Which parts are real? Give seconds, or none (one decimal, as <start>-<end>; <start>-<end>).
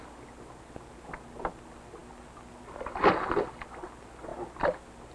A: 0.0-5.1